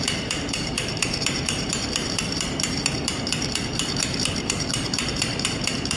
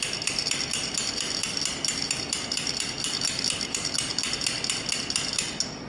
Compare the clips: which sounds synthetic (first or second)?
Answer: first